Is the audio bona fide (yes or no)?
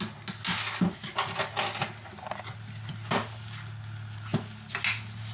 yes